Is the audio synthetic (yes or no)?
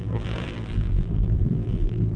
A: yes